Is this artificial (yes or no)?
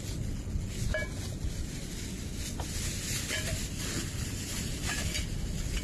no